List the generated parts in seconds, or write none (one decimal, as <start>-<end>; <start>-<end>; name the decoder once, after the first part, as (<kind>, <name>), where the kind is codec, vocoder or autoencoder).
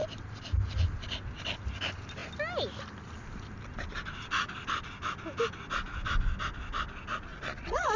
7.3-8.0 (vocoder, Vocos)